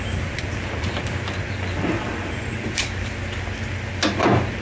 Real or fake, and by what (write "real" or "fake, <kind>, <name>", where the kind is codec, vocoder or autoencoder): real